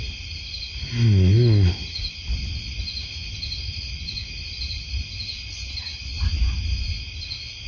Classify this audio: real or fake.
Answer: real